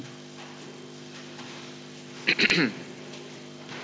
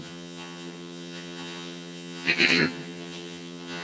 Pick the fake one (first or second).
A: second